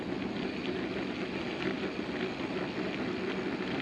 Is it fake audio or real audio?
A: real